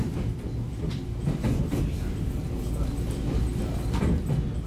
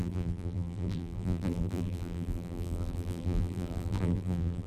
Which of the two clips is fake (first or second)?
second